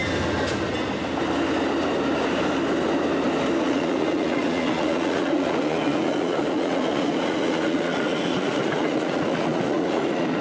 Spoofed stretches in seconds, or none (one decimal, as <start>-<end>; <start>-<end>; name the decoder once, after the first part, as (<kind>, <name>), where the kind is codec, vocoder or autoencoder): 3.6-10.4 (vocoder, Vocos)